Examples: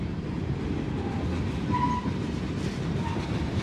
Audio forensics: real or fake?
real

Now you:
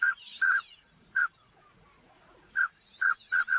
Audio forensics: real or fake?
fake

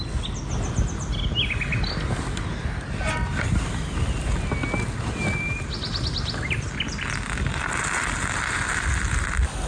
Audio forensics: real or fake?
real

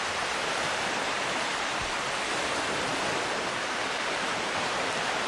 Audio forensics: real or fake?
real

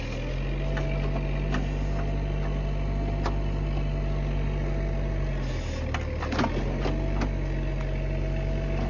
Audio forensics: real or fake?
real